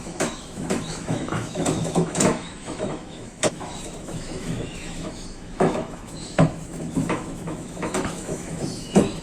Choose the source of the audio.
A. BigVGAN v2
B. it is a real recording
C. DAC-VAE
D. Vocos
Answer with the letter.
C